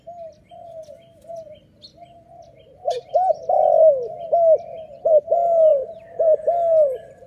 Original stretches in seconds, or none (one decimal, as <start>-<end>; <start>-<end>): 0.0-7.3